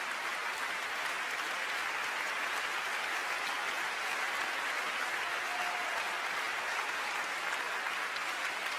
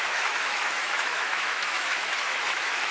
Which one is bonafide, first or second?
first